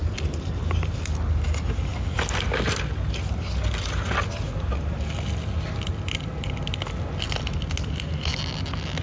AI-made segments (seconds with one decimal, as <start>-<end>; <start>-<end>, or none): none